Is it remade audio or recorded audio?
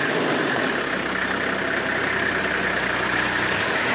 recorded